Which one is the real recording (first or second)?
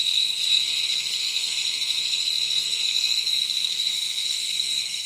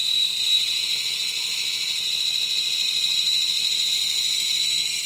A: second